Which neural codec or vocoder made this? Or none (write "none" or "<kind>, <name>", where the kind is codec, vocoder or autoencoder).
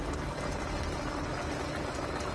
none